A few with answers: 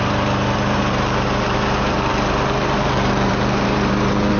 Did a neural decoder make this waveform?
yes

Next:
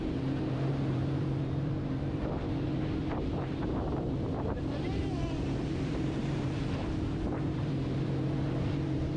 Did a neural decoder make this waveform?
yes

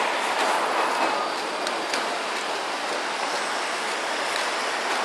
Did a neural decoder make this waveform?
no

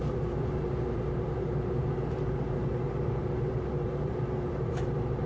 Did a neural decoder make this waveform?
yes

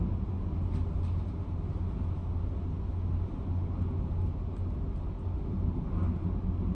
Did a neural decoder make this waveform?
no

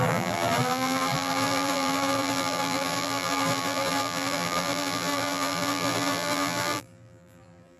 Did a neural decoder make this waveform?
yes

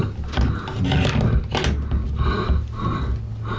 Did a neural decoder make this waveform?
no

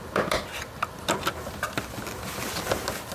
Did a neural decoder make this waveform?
no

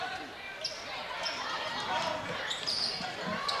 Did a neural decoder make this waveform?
yes